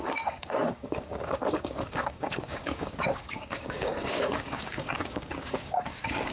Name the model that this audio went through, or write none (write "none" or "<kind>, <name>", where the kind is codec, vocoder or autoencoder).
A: codec, DAC